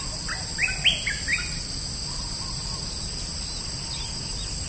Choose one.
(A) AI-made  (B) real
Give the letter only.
B